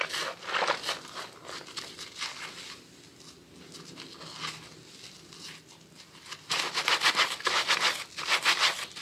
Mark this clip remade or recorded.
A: recorded